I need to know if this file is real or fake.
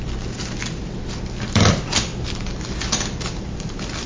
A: real